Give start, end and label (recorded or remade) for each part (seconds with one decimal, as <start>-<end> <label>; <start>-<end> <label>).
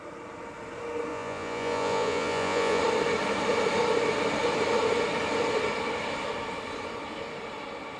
0.0-1.1 recorded; 1.1-2.8 remade; 2.8-8.0 recorded